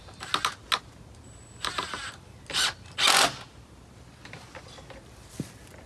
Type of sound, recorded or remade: recorded